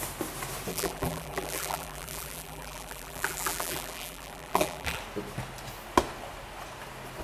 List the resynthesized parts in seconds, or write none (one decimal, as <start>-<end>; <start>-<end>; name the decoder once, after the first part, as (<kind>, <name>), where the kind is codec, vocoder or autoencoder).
0.7-5.0 (vocoder, BigVGAN v2)